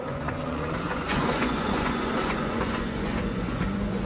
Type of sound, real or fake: fake